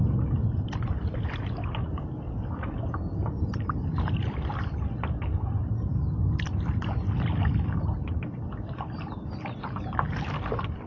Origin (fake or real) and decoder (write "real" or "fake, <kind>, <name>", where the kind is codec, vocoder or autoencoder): real